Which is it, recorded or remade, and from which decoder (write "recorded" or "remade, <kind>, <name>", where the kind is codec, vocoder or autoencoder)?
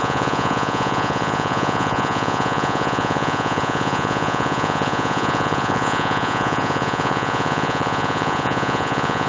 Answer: remade, vocoder, Vocos